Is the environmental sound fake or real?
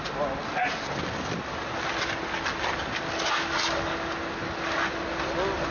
real